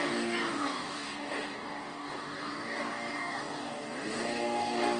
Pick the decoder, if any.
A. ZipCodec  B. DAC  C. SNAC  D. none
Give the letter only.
B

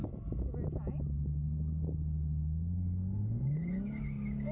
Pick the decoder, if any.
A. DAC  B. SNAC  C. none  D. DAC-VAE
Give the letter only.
C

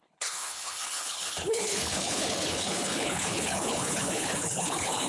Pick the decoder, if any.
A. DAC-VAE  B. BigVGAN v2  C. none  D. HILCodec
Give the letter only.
D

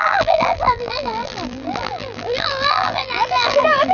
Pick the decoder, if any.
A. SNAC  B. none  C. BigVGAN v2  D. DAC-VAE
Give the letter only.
C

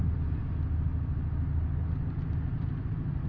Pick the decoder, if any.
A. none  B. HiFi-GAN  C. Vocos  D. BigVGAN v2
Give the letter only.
A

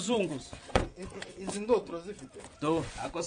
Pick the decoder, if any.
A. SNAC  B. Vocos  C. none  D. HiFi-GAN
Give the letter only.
B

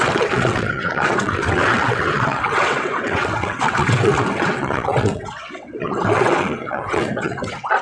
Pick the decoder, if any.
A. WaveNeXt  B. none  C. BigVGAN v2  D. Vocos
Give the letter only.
A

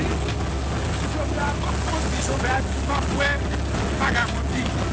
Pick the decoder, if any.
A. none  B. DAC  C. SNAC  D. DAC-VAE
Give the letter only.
A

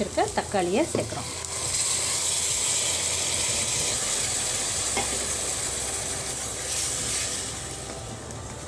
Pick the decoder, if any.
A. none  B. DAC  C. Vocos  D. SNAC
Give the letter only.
A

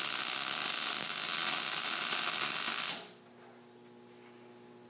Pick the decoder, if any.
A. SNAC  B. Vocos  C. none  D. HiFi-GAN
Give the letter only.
C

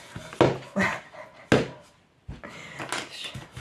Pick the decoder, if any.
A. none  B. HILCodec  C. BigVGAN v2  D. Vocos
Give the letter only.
A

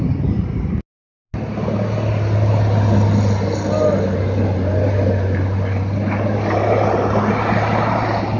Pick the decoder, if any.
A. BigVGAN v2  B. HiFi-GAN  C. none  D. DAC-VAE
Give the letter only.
C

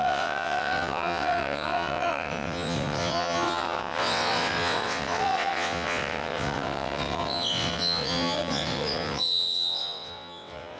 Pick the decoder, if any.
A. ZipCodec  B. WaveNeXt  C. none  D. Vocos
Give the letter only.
B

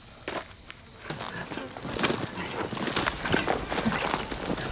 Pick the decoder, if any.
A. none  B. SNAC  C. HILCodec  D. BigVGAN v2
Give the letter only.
A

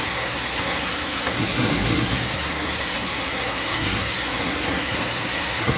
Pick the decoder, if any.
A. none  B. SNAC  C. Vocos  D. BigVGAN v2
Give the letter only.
B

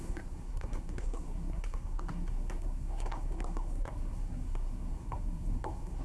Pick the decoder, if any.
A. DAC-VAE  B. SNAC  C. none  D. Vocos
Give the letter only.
B